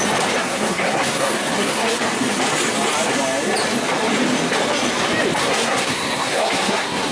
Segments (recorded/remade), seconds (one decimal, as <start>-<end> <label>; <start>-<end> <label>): 0.0-0.4 recorded; 0.4-2.0 remade; 2.0-5.4 recorded; 5.4-7.1 remade